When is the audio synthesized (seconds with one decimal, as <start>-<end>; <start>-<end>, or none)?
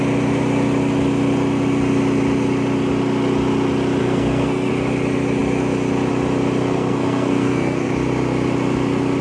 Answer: 4.0-4.7; 6.6-7.9